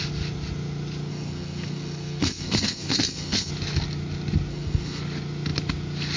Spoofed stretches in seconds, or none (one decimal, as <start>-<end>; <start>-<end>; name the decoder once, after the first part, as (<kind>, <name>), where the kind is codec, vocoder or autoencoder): 1.1-3.5 (codec, SNAC); 4.5-5.0

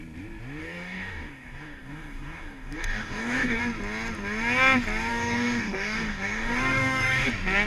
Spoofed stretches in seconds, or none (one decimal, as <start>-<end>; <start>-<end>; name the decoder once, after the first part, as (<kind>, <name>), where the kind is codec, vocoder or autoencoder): 0.6-3.6 (codec, DAC); 5.1-7.3

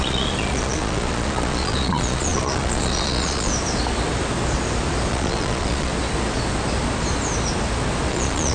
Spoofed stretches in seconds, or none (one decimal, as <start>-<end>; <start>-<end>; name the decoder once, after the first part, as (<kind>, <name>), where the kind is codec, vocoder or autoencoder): 0.0-3.5 (vocoder, Vocos); 5.1-5.9; 8.1-8.5

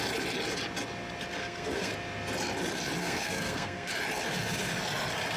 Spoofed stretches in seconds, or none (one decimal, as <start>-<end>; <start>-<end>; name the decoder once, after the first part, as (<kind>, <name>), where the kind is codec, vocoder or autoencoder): 1.4-1.9 (codec, SNAC); 3.0-3.9

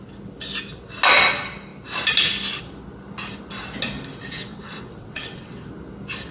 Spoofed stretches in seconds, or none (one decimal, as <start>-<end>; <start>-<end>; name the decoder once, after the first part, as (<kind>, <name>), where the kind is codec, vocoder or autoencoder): 4.5-5.6 (vocoder, WaveNeXt)